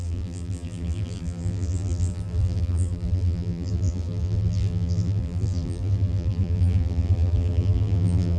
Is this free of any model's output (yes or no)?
no